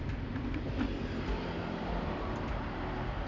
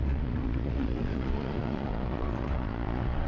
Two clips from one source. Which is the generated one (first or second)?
second